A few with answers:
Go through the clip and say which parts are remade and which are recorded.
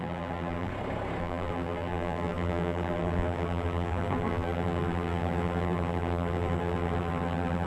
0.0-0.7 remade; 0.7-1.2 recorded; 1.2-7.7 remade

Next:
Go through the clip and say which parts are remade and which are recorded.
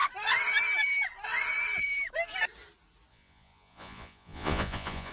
0.0-3.1 recorded; 3.1-5.1 remade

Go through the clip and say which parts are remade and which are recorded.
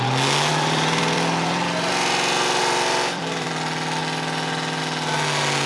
0.0-0.5 recorded; 0.5-1.9 remade; 1.9-2.6 recorded; 2.6-3.5 remade; 3.5-5.7 recorded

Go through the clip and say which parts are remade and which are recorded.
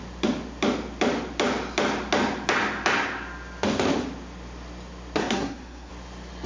0.0-5.2 recorded; 5.2-5.9 remade; 5.9-6.5 recorded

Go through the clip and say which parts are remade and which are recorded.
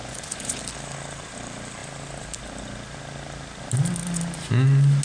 0.0-0.6 remade; 0.6-5.0 recorded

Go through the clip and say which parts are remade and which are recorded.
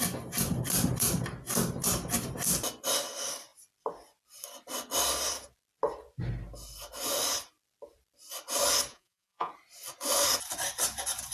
0.0-8.9 recorded; 8.9-9.5 remade; 9.5-11.3 recorded